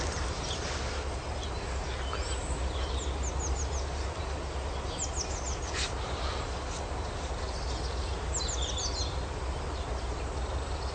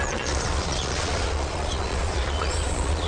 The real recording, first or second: first